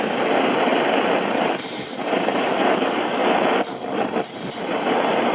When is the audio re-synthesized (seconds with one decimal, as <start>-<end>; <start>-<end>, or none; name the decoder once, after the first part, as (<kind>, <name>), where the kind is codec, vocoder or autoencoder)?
0.0-0.7 (vocoder, BigVGAN v2); 1.3-3.2; 4.5-5.3

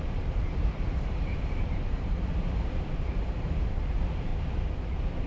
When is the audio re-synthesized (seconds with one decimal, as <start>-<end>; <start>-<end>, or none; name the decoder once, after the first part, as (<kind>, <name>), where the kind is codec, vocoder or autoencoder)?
0.0-4.3 (vocoder, BigVGAN v2)

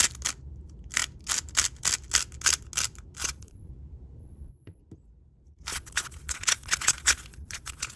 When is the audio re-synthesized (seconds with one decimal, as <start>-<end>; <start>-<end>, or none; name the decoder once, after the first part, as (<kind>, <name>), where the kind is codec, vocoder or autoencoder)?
3.2-3.7 (vocoder, Vocos); 4.2-4.8; 5.7-8.0

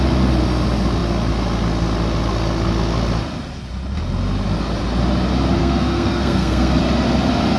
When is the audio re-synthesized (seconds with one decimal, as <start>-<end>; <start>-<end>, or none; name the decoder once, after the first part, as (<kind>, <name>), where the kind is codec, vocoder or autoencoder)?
5.6-6.8 (codec, SNAC)